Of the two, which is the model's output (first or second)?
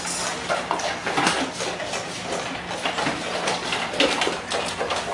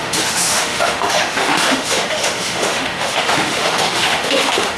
second